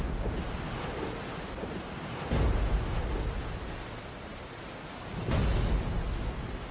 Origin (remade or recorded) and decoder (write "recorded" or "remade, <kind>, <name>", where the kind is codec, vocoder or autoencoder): recorded